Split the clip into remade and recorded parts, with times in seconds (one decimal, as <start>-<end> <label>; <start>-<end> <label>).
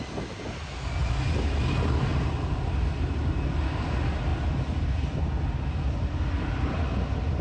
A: 0.0-7.4 recorded